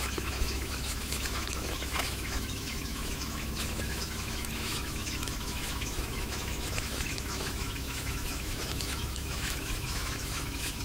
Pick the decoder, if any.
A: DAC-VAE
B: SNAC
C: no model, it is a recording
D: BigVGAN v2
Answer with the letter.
A